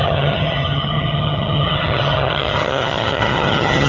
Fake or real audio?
fake